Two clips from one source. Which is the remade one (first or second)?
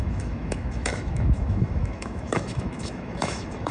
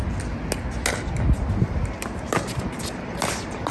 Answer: first